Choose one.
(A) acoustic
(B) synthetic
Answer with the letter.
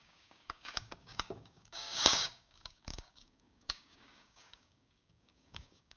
B